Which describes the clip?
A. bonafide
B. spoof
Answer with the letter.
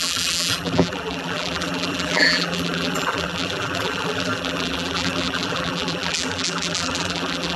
B